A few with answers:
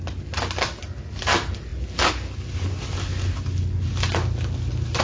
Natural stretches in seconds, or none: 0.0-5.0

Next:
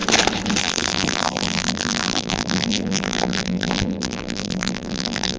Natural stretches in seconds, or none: 0.0-0.6

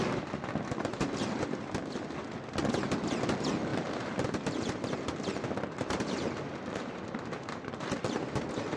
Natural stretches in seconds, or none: 0.0-3.7; 8.3-8.8

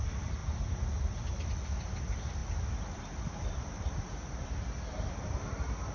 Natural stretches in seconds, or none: 0.0-5.9

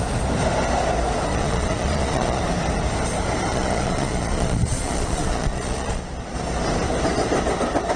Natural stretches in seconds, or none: 0.0-1.3; 2.4-3.5; 6.0-8.0

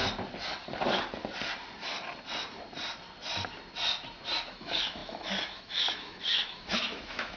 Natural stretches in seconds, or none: 0.0-4.4

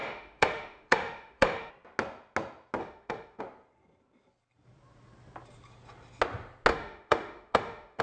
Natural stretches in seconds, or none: 1.7-2.8; 3.4-6.7